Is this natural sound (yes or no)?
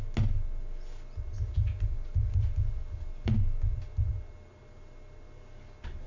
yes